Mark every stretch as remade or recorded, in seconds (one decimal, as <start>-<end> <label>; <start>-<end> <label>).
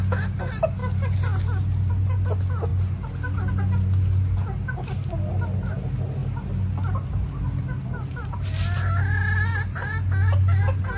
0.0-11.0 recorded